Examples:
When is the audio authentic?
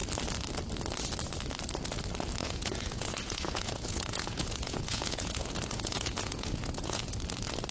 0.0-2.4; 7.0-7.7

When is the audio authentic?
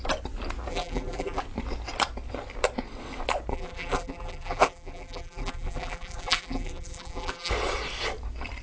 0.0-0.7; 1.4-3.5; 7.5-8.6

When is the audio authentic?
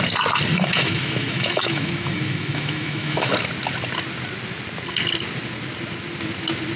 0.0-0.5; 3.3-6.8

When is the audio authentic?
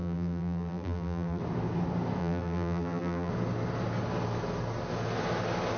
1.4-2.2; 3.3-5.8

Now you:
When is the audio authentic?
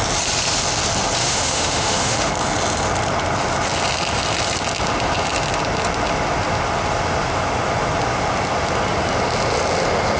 0.0-1.2; 2.3-10.2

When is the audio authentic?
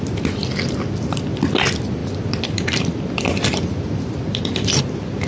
0.0-0.4; 1.2-2.0; 4.8-5.3